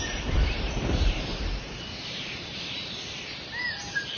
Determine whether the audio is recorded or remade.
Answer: remade